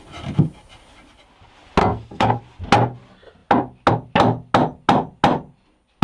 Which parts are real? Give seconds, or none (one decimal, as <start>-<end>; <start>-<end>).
0.0-1.8; 2.4-6.0